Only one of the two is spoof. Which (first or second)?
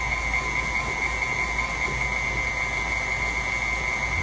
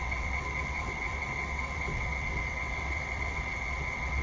second